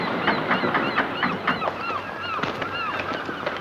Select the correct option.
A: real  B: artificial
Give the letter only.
A